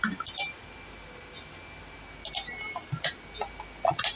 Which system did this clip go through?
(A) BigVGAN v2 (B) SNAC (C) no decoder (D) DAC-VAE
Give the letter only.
C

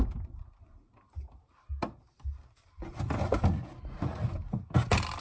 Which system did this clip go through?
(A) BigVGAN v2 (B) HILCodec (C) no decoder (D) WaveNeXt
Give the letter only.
C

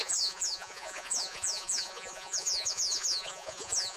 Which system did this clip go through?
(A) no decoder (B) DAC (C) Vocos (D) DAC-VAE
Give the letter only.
C